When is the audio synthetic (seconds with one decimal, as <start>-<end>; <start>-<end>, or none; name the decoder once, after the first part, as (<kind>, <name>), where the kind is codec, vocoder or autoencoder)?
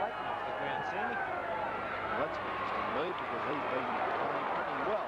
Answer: 1.4-4.0 (vocoder, BigVGAN v2)